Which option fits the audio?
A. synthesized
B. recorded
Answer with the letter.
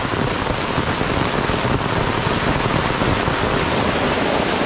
B